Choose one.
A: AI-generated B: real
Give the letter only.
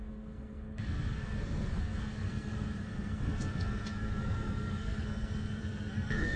A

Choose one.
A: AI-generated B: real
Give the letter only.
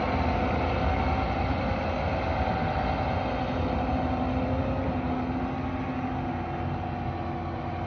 B